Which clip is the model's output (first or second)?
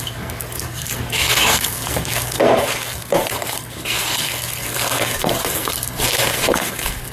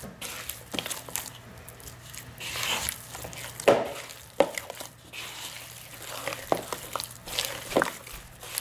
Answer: first